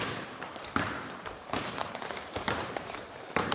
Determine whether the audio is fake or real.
fake